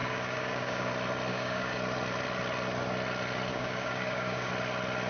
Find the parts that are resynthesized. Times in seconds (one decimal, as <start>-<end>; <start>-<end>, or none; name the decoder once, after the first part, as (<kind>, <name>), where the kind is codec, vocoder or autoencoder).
0.0-0.9 (codec, DAC); 1.3-1.8; 3.5-4.5